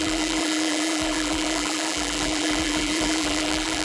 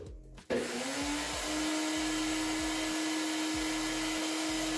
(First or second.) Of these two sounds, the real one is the second